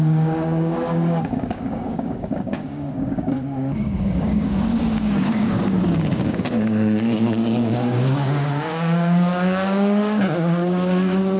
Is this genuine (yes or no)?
no